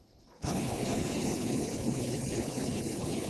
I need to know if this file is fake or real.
fake